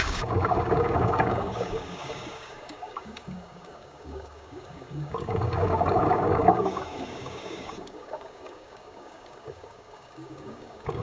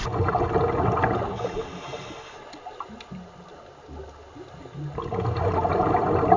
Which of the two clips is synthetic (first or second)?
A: first